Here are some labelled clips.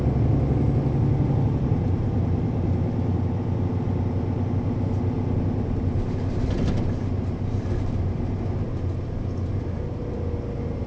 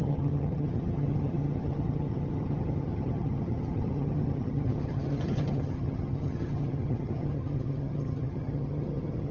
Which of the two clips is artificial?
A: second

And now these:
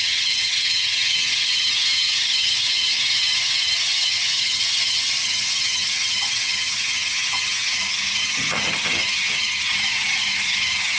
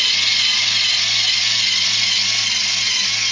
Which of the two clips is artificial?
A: first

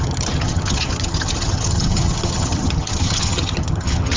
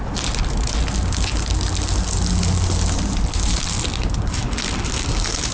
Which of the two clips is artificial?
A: first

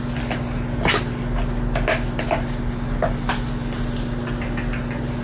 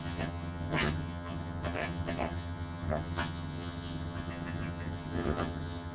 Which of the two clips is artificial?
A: second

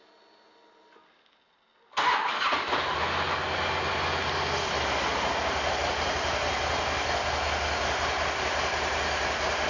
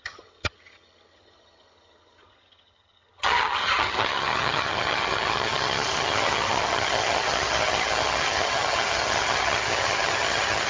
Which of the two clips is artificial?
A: second